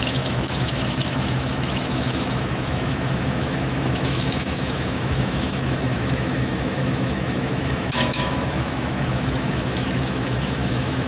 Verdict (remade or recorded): remade